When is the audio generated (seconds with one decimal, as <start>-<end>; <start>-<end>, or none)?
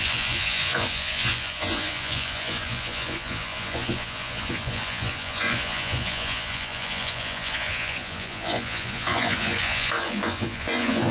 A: 0.0-11.1